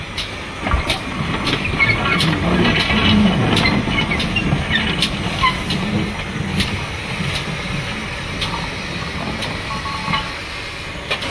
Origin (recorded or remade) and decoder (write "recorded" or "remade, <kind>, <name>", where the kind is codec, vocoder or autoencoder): recorded